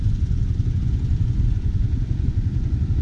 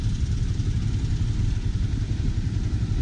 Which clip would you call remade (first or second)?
first